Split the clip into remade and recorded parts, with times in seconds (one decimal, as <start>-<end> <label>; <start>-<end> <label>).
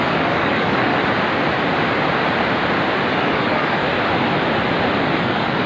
0.0-0.9 remade; 0.9-3.1 recorded; 3.1-3.8 remade; 3.8-5.0 recorded; 5.0-5.7 remade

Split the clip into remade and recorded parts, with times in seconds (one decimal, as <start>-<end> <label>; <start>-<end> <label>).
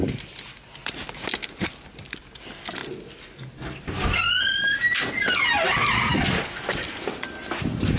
0.0-0.8 recorded; 0.8-2.2 remade; 2.2-8.0 recorded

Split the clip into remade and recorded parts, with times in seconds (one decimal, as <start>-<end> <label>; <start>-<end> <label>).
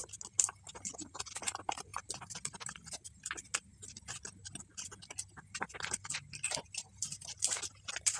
0.0-8.2 recorded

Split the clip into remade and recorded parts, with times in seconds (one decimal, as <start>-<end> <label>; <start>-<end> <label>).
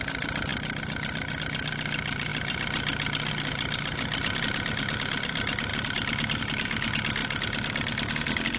0.0-8.6 recorded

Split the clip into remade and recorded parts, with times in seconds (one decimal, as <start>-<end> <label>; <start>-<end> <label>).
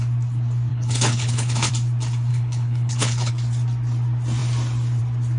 0.0-0.7 recorded; 0.7-1.7 remade; 1.7-2.3 recorded; 2.3-3.3 remade; 3.3-5.4 recorded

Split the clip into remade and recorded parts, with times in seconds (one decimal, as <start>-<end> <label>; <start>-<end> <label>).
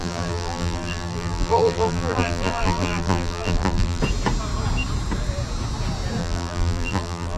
0.0-4.0 remade; 4.0-6.2 recorded; 6.2-7.4 remade